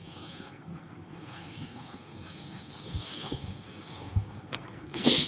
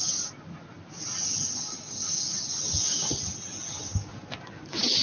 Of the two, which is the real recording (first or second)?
second